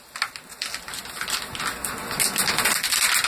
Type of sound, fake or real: real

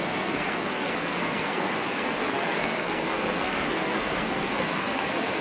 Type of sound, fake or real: fake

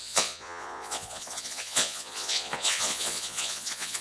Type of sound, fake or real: fake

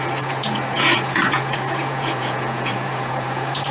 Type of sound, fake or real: fake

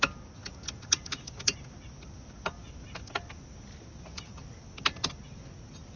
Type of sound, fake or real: real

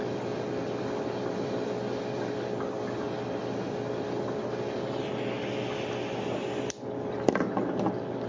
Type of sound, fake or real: real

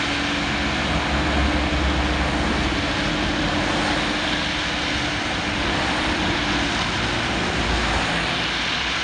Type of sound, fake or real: real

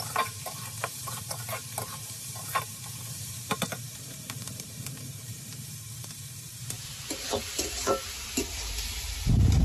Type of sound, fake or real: fake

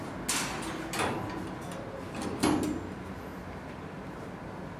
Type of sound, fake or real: real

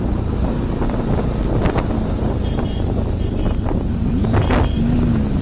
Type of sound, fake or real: real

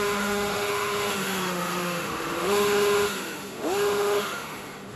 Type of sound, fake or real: fake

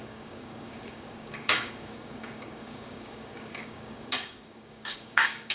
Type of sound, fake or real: fake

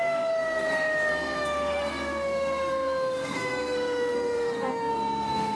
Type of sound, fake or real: fake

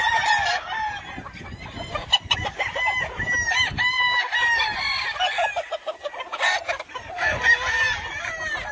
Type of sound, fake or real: real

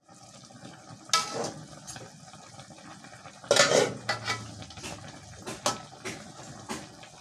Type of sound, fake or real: real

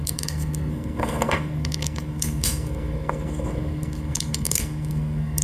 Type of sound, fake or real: fake